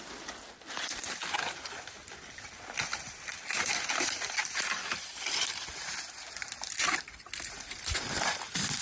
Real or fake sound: real